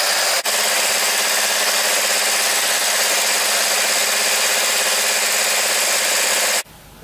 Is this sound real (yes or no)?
yes